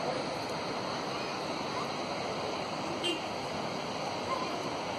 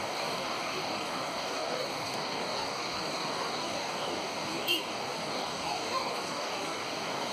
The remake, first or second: second